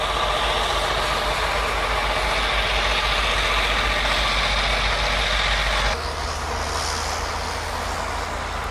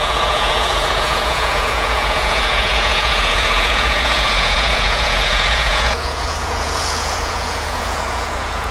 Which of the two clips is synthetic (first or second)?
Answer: second